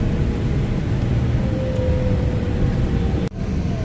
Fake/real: real